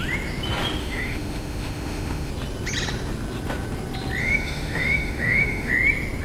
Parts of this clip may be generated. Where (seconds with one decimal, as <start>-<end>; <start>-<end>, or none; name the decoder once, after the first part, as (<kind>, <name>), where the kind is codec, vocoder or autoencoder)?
0.8-2.3 (autoencoder, DAC-VAE); 4.2-5.7